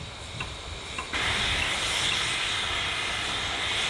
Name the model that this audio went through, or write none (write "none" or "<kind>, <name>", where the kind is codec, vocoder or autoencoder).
none